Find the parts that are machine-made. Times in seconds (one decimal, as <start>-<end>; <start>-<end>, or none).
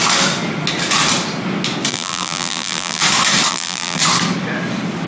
1.9-3.0; 3.5-4.0